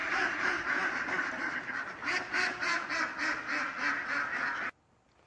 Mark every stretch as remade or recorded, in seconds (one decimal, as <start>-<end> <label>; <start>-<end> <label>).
0.0-2.9 remade; 2.9-5.3 recorded